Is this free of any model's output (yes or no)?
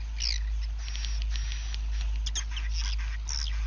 yes